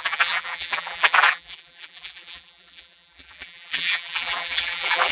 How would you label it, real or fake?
fake